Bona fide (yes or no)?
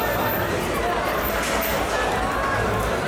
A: yes